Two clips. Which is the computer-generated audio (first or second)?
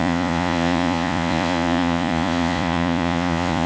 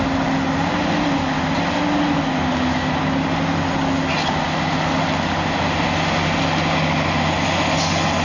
first